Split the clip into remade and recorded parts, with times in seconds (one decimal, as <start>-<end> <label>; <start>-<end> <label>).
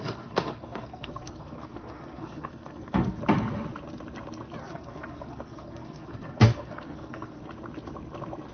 0.0-3.2 remade; 3.2-4.6 recorded; 4.6-7.4 remade; 7.4-8.5 recorded